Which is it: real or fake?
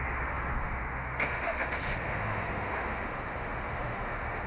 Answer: fake